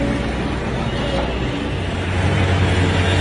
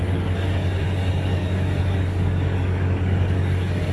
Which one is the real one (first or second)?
first